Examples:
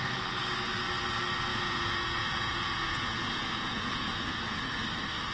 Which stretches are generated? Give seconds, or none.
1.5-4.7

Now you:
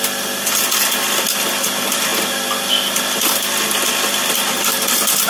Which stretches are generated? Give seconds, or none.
none